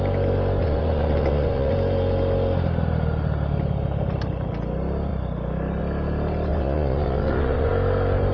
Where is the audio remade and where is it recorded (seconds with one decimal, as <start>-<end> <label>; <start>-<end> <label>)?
0.0-0.6 recorded; 0.6-1.7 remade; 1.7-6.5 recorded; 6.5-7.7 remade; 7.7-8.3 recorded

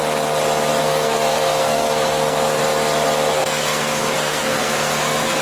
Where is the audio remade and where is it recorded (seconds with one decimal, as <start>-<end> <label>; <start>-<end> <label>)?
0.0-0.8 recorded; 0.8-2.6 remade; 2.6-3.3 recorded; 3.3-5.4 remade